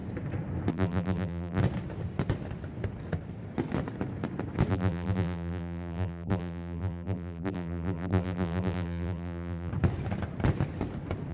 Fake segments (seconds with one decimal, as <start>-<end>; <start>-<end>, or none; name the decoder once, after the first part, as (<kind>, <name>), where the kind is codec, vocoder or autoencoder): 0.7-1.6 (vocoder, BigVGAN v2); 4.7-9.7